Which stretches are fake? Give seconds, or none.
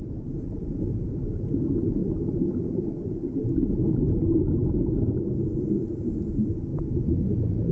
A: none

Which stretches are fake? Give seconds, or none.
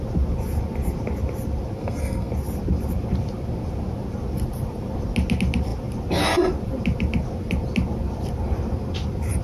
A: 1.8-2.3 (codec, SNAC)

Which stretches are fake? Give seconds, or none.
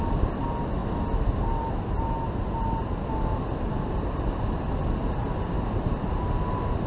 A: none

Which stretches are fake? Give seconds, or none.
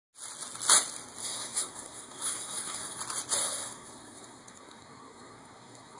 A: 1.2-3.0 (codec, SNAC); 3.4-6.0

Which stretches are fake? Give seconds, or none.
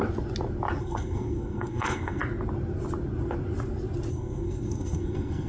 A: 0.8-2.2 (codec, SNAC); 4.1-5.5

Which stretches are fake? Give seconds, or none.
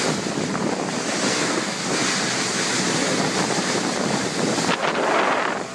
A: 1.3-1.8 (codec, SNAC)